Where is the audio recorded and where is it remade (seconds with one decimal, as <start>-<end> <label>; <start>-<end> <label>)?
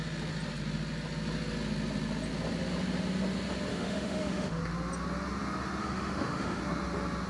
0.0-3.7 recorded; 3.7-4.6 remade; 4.6-5.8 recorded; 5.8-6.6 remade; 6.6-7.3 recorded